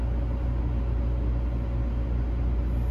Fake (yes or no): no